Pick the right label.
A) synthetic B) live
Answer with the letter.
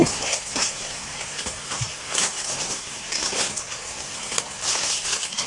A